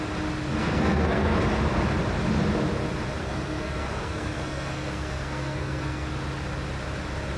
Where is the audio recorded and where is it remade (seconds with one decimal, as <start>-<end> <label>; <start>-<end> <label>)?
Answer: 0.0-0.6 recorded; 0.6-1.4 remade; 1.4-3.2 recorded; 3.2-6.1 remade; 6.1-7.4 recorded

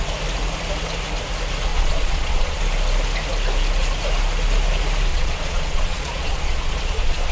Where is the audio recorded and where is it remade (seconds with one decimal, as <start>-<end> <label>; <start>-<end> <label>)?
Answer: 0.0-1.7 recorded; 1.7-2.6 remade; 2.6-5.1 recorded; 5.1-7.3 remade

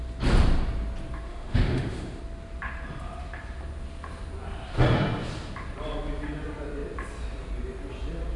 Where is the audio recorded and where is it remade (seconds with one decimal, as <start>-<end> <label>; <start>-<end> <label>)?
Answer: 0.0-1.3 recorded; 1.3-2.2 remade; 2.2-8.4 recorded

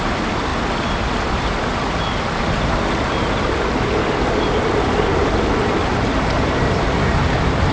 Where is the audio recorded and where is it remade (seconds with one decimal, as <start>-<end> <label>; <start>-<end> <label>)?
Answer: 0.0-7.7 remade

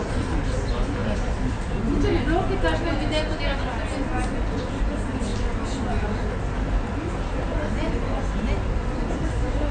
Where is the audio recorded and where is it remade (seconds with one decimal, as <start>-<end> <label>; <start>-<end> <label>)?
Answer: 0.0-1.0 recorded; 1.0-1.8 remade; 1.8-9.7 recorded

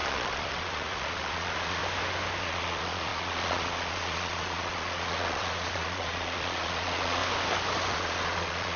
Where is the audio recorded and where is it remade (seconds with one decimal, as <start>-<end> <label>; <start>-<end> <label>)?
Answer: 0.0-1.8 remade; 1.8-2.4 recorded; 2.4-7.2 remade; 7.2-7.9 recorded; 7.9-8.8 remade

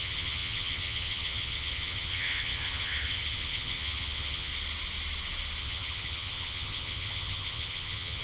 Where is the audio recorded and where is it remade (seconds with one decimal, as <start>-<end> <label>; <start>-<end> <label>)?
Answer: 0.0-4.5 remade; 4.5-5.6 recorded; 5.6-8.2 remade

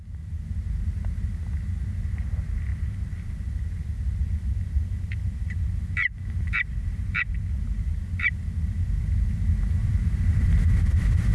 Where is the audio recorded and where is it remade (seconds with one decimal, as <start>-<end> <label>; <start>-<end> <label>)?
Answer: 0.0-2.7 recorded; 2.7-3.3 remade; 3.3-4.2 recorded; 4.2-9.0 remade; 9.0-9.8 recorded; 9.8-11.3 remade